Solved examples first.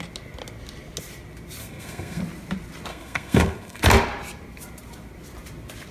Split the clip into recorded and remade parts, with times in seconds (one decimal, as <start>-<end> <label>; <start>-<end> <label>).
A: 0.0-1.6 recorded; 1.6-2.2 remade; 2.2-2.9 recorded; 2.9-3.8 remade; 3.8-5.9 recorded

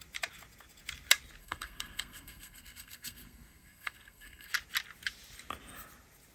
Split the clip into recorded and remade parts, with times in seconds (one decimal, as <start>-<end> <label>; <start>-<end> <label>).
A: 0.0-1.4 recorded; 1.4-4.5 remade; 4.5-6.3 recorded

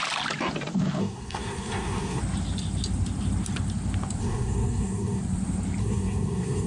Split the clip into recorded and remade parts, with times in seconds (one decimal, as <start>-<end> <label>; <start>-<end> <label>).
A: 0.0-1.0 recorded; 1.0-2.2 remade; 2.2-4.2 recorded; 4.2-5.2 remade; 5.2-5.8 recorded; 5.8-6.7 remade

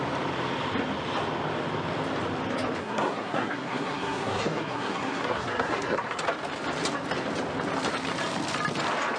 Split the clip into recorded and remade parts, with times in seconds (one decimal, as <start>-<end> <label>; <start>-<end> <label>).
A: 0.0-2.8 recorded; 2.8-6.2 remade; 6.2-9.2 recorded

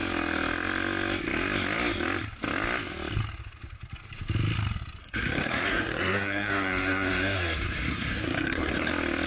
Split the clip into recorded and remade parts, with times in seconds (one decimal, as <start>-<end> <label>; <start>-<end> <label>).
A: 0.0-5.0 recorded; 5.0-8.9 remade; 8.9-9.3 recorded

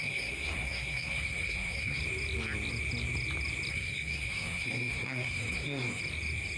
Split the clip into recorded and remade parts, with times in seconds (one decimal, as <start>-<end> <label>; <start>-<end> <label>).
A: 0.0-2.0 remade; 2.0-3.7 recorded; 3.7-6.0 remade; 6.0-6.6 recorded

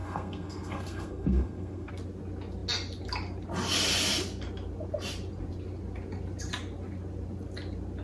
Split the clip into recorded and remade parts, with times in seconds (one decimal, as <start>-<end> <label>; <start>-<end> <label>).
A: 0.0-1.9 remade; 1.9-8.0 recorded